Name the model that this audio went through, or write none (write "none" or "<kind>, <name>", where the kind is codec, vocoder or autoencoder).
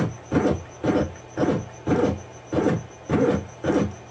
none